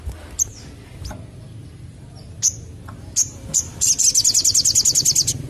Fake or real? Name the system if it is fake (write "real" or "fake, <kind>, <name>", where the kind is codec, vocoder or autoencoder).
real